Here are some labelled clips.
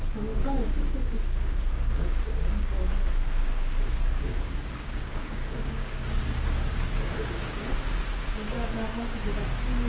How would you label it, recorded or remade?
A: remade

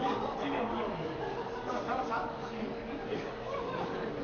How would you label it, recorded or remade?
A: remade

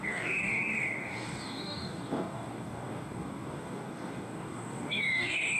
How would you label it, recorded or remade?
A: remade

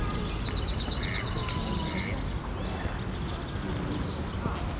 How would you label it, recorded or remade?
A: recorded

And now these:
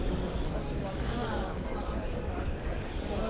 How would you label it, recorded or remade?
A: remade